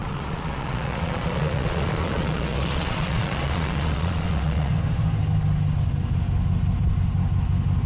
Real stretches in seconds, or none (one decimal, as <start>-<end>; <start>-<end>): 4.7-7.9